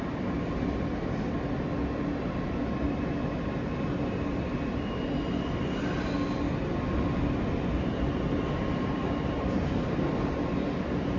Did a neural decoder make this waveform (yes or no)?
no